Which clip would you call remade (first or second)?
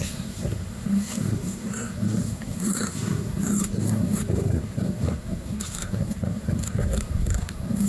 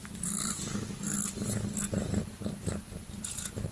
first